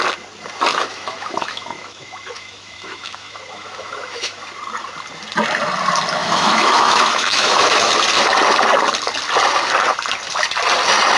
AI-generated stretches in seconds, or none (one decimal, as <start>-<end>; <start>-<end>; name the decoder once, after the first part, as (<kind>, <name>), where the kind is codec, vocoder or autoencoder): 0.7-4.4 (autoencoder, DAC-VAE); 6.2-7.9